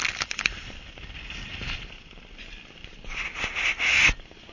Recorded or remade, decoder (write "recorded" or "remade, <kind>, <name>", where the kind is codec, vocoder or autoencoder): recorded